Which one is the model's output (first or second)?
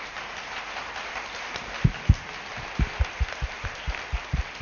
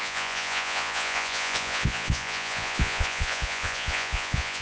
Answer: second